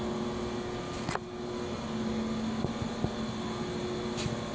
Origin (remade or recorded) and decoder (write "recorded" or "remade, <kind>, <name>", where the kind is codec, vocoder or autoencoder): recorded